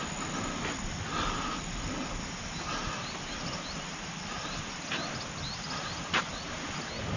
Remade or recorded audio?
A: recorded